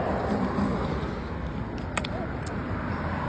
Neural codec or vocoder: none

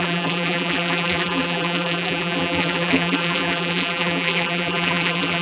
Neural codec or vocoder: vocoder, BigVGAN v2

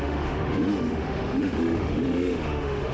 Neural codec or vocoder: autoencoder, DAC-VAE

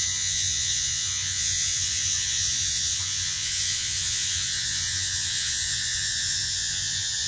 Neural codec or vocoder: vocoder, Vocos